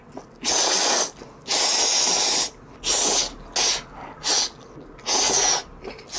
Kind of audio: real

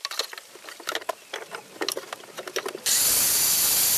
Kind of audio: real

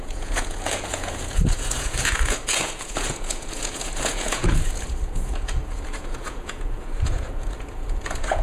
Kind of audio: fake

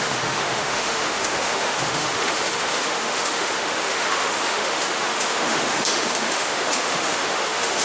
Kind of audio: fake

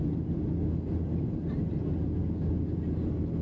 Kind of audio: real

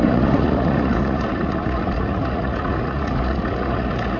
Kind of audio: fake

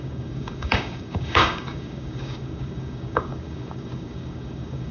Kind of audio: fake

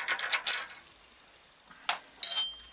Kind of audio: real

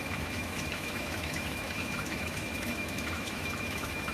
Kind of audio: fake